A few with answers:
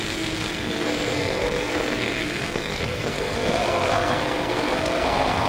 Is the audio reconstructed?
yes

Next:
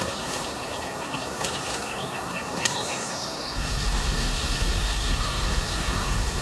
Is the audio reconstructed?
yes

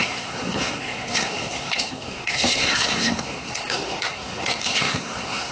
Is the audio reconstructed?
yes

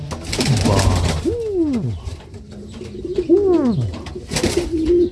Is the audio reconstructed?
no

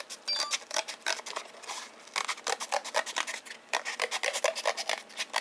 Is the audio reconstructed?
no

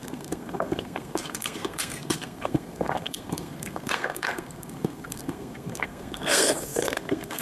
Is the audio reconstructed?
yes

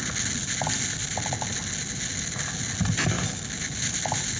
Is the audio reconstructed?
no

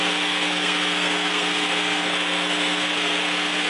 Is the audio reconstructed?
yes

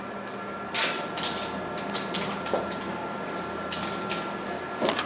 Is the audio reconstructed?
no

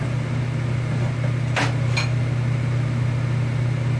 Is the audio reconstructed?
no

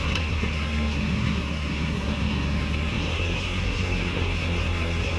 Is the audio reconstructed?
yes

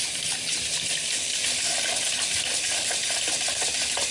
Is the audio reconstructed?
no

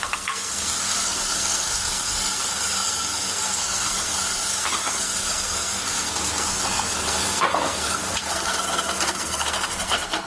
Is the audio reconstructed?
yes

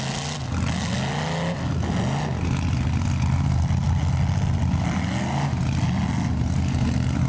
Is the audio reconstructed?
no